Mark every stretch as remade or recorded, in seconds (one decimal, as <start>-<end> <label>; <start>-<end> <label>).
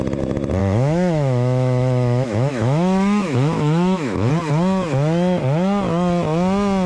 0.0-0.6 recorded; 0.6-4.3 remade; 4.3-6.9 recorded